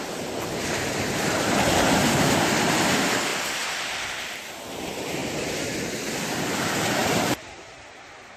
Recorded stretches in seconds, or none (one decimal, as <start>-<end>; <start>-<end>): 0.0-7.0; 7.6-8.4